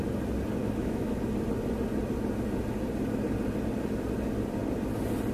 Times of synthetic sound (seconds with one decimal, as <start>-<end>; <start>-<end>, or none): 0.6-1.1